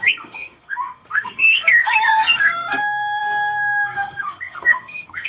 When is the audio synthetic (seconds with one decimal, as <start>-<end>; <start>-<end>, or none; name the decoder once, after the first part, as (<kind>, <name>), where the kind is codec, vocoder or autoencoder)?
0.0-5.3 (codec, SNAC)